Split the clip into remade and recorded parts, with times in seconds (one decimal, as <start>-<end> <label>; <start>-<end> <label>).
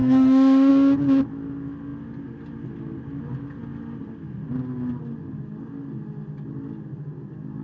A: 0.0-0.7 remade; 0.7-7.6 recorded